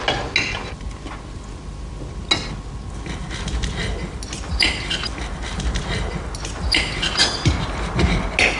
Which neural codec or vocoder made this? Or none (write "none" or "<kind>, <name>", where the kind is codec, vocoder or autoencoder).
none